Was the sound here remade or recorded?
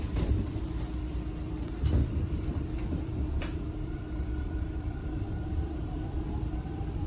remade